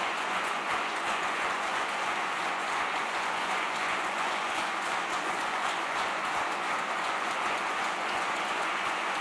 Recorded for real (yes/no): no